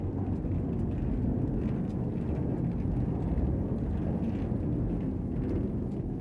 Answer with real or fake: real